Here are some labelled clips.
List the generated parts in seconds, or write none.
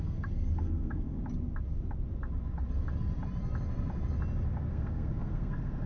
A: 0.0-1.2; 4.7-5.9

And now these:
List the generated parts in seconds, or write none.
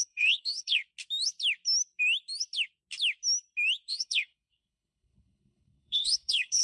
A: 0.0-0.8; 3.9-6.6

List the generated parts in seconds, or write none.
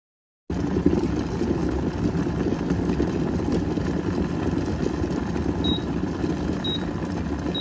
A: 5.7-6.2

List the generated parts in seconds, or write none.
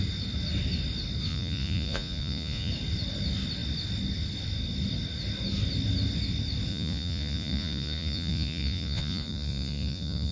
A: 1.3-2.7; 6.7-10.3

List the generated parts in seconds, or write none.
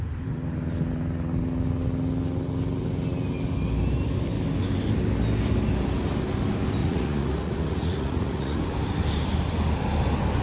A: 6.8-8.6